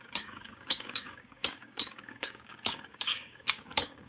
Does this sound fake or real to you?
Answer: fake